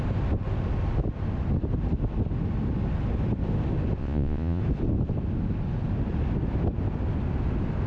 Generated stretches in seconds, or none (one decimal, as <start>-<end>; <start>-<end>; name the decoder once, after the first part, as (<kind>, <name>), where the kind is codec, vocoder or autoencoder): 4.0-4.6 (vocoder, Vocos)